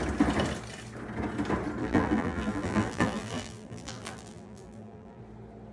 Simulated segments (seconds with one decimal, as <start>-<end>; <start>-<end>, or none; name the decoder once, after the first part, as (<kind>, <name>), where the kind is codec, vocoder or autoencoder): 1.8-5.2 (vocoder, BigVGAN v2)

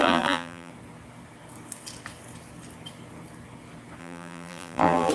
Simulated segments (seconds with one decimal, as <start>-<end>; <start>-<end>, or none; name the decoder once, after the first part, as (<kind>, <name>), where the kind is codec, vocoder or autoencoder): 0.0-0.7 (vocoder, BigVGAN v2); 4.0-5.1

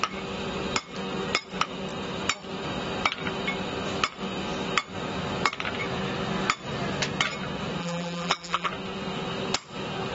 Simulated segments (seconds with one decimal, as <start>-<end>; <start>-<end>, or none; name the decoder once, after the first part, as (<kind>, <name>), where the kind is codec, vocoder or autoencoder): 7.8-8.7 (vocoder, BigVGAN v2)

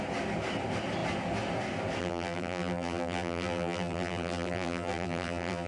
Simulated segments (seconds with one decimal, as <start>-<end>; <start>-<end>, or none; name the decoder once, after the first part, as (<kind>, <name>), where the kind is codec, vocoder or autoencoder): 2.0-5.7 (vocoder, BigVGAN v2)

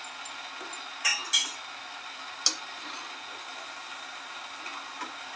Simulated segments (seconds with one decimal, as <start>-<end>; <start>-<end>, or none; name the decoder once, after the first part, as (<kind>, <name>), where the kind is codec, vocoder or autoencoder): 4.7-5.4 (vocoder, BigVGAN v2)

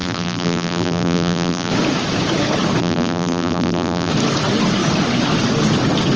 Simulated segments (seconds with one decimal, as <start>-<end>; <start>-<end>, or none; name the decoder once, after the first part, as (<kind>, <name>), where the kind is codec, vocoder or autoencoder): 0.0-1.7 (vocoder, BigVGAN v2); 2.8-4.1

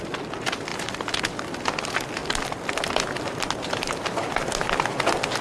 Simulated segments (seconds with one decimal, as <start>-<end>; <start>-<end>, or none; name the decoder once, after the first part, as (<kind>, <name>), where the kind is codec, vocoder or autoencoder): 0.7-1.2 (vocoder, BigVGAN v2)

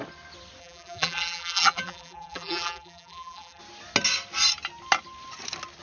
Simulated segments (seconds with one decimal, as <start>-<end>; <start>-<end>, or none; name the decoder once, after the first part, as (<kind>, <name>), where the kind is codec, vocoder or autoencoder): 0.6-3.6 (vocoder, BigVGAN v2)